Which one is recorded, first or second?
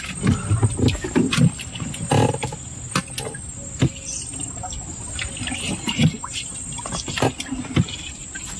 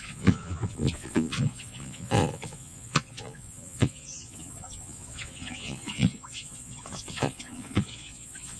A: first